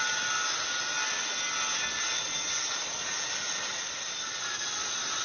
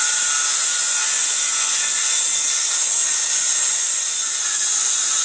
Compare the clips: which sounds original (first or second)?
first